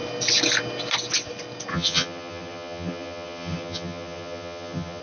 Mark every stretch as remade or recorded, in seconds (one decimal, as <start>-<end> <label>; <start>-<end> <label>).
0.0-1.7 recorded; 1.7-5.0 remade